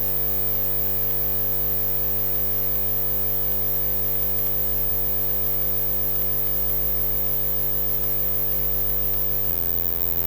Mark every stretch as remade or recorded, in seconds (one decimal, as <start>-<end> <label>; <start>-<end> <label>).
0.0-9.5 recorded; 9.5-10.3 remade

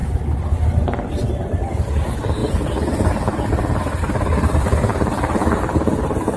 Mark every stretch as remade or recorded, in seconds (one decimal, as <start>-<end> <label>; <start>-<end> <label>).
0.0-1.1 recorded; 1.1-6.4 remade

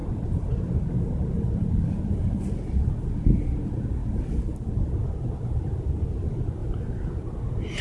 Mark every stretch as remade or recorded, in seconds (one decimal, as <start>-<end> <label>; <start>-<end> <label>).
0.0-6.6 recorded; 6.6-7.1 remade; 7.1-7.8 recorded

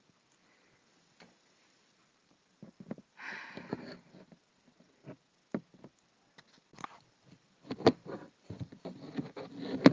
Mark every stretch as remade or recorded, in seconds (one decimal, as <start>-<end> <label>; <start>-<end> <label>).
0.0-9.9 recorded

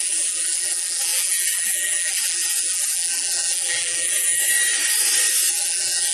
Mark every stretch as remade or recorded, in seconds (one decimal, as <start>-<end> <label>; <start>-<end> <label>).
0.0-4.4 remade; 4.4-5.5 recorded; 5.5-6.1 remade

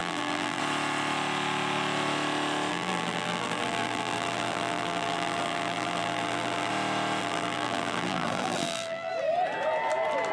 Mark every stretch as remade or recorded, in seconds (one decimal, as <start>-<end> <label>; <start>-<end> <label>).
0.0-0.6 remade; 0.6-2.7 recorded; 2.7-6.7 remade; 6.7-7.2 recorded; 7.2-9.1 remade; 9.1-10.3 recorded